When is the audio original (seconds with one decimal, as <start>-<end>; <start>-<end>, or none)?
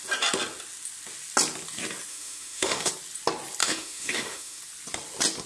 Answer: 0.0-2.1; 2.9-3.6; 4.6-5.5